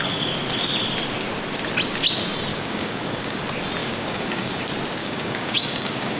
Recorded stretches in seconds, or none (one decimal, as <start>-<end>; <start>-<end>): 0.0-2.5; 3.4-3.8; 4.6-5.0